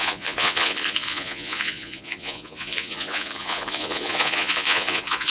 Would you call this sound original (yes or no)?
no